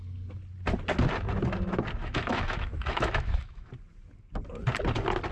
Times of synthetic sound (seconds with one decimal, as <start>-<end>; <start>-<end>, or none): 2.0-3.7